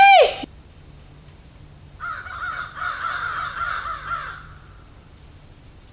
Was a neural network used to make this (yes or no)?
yes